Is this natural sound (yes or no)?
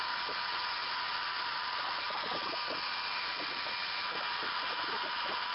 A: yes